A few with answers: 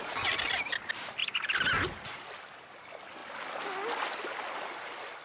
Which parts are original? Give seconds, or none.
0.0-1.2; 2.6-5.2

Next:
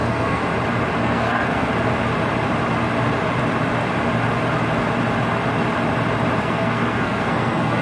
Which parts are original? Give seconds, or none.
0.4-1.0; 1.7-6.4

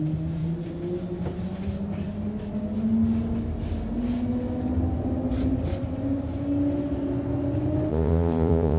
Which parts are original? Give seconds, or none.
0.0-7.9

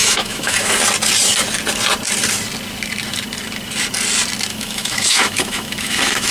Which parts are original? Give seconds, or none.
0.7-4.5